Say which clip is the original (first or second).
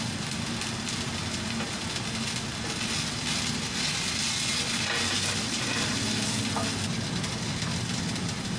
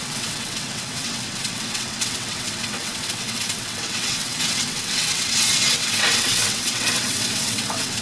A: first